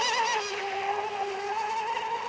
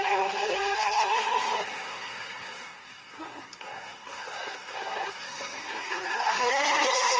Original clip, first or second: first